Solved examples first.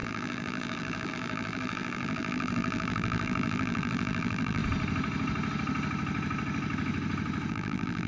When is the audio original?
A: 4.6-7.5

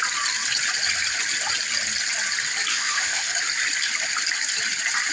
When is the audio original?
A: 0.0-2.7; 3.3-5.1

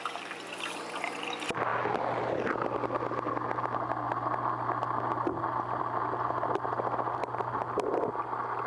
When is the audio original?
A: 0.0-8.7